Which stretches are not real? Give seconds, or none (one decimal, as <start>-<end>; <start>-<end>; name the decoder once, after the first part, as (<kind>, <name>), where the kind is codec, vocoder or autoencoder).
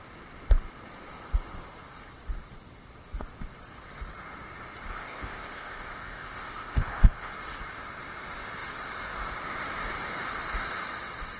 4.9-7.3 (codec, ZipCodec)